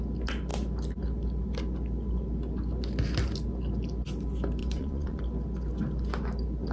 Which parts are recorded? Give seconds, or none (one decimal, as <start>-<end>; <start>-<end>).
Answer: 0.0-4.6; 5.2-6.7